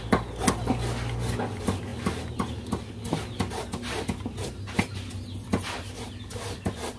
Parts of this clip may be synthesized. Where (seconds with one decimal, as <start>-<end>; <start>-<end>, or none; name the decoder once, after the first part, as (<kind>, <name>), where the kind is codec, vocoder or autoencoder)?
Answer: none